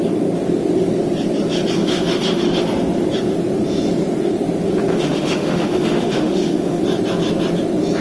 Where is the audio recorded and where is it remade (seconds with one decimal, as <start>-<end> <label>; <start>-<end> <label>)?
0.0-1.8 recorded; 1.8-2.6 remade; 2.6-4.9 recorded; 4.9-6.8 remade; 6.8-8.0 recorded